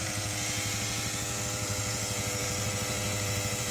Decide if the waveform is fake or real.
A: fake